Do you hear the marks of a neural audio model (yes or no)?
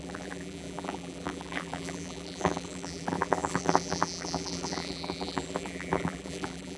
yes